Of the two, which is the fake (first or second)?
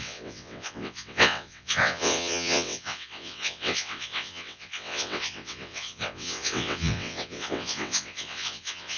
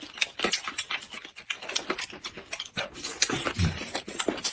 first